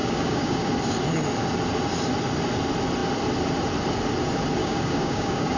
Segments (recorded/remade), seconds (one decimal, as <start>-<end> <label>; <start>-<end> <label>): 0.0-0.7 remade; 0.7-4.6 recorded; 4.6-5.6 remade